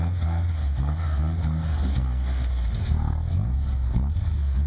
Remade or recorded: remade